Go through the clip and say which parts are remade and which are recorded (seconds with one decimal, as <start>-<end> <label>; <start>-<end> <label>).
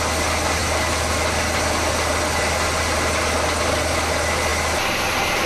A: 0.0-5.5 recorded